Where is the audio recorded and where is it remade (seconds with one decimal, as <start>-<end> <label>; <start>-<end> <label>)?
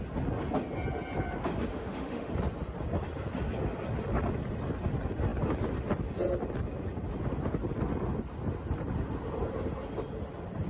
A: 0.0-1.7 recorded; 1.7-2.3 remade; 2.3-10.7 recorded